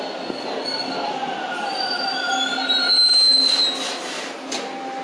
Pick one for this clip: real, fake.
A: real